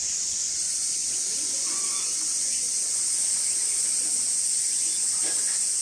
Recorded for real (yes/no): no